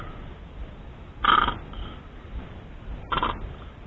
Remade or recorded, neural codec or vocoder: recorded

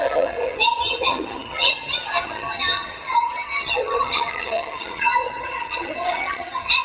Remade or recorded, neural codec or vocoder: remade, vocoder, HiFi-GAN